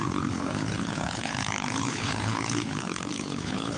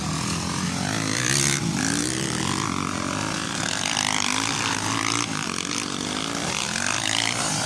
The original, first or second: second